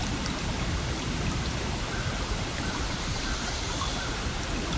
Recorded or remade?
recorded